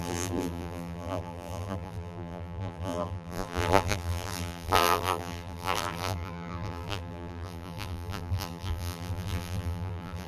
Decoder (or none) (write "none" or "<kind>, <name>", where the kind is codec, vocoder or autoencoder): vocoder, BigVGAN v2